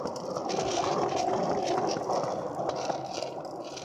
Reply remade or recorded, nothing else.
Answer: recorded